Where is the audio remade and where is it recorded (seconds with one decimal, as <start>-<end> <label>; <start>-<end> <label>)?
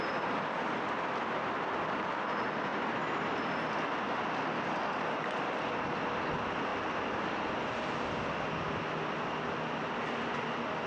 0.0-10.9 recorded